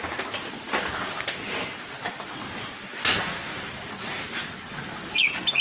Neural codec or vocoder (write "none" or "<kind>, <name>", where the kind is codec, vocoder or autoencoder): none